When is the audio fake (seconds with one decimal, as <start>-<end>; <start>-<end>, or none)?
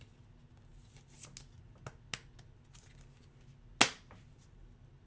none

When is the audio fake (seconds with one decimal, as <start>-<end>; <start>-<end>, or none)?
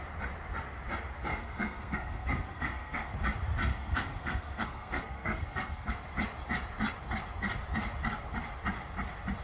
1.3-3.1; 3.7-5.9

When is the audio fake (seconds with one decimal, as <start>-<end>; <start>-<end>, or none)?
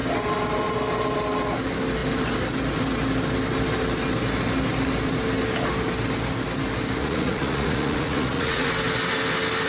7.0-8.7